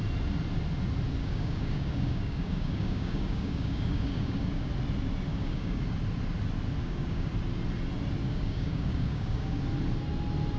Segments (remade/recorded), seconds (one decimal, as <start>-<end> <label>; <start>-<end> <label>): 0.0-1.2 recorded; 1.2-4.7 remade; 4.7-5.3 recorded; 5.3-5.8 remade; 5.8-6.8 recorded; 6.8-7.3 remade; 7.3-8.2 recorded; 8.2-9.6 remade; 9.6-10.6 recorded